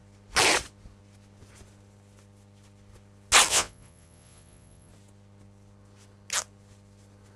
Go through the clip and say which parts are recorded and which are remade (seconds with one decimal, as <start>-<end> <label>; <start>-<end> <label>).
0.0-3.5 recorded; 3.5-4.9 remade; 4.9-7.4 recorded